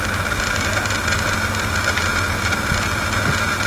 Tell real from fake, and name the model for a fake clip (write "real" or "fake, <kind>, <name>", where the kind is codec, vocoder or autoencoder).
real